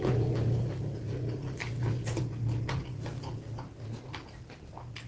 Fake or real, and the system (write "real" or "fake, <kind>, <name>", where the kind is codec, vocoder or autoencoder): real